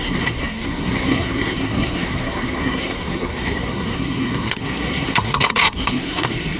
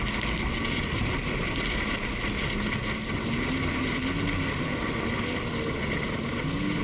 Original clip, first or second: second